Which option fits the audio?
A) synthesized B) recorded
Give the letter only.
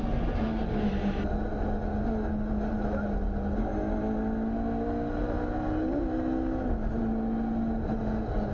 B